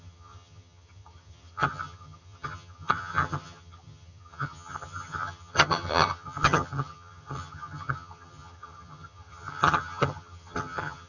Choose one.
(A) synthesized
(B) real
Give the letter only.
A